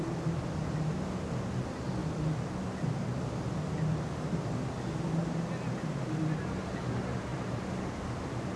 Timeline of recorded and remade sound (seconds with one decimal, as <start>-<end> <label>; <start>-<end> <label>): 0.0-8.6 recorded